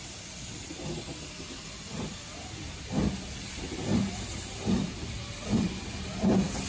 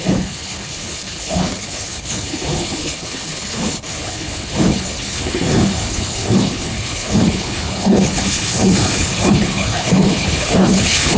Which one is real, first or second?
first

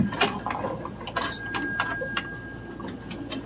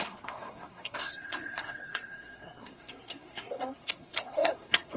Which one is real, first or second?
first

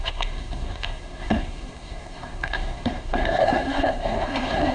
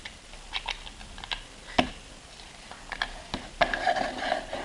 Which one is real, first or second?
second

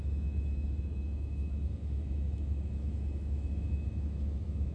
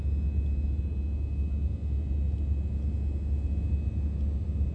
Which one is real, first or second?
second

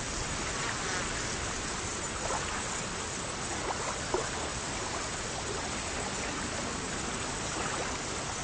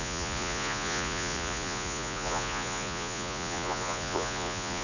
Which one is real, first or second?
first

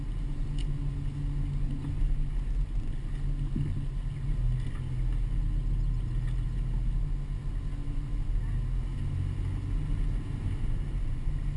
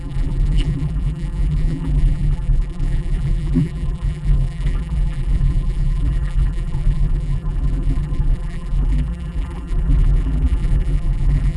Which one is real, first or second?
first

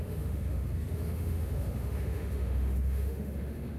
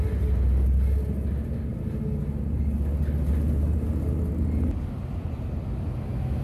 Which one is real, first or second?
second